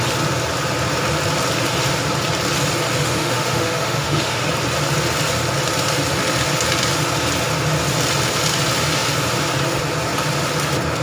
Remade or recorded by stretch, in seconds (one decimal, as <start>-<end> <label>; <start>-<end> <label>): 0.0-3.0 recorded; 3.0-4.5 remade; 4.5-11.0 recorded